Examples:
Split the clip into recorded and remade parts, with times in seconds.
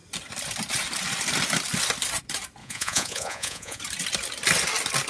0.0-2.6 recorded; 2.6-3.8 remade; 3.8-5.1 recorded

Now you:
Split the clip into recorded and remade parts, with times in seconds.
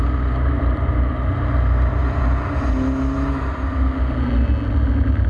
0.0-5.3 recorded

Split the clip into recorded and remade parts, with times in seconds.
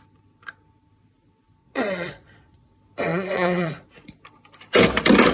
0.0-1.6 recorded; 1.6-2.7 remade; 2.7-3.1 recorded; 3.1-3.7 remade; 3.7-5.3 recorded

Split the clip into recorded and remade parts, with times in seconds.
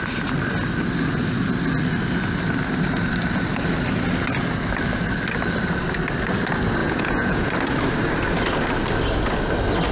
0.0-6.8 recorded; 6.8-7.5 remade; 7.5-9.9 recorded